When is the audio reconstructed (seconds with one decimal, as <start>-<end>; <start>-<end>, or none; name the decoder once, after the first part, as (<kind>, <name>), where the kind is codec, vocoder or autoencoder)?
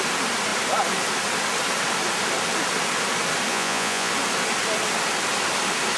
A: 3.5-4.1 (vocoder, Vocos)